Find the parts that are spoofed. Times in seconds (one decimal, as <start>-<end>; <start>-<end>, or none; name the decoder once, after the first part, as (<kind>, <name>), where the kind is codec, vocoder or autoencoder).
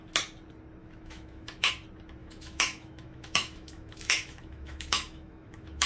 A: 0.8-1.7 (autoencoder, DAC-VAE); 2.2-5.9